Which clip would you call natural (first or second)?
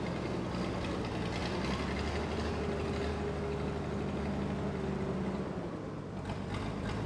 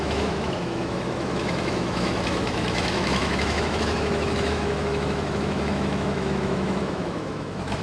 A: first